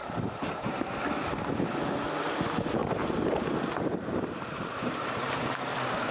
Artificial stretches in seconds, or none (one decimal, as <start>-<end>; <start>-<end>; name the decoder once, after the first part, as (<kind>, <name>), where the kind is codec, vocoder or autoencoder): 0.0-1.0 (vocoder, BigVGAN v2); 2.8-3.4; 3.9-6.1